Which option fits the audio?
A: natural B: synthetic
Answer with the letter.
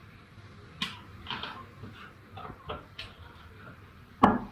A